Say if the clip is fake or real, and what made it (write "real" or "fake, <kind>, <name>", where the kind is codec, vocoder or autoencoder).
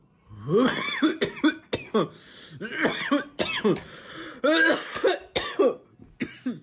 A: real